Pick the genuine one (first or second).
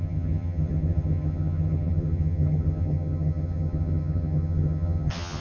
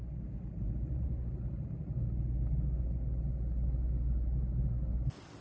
second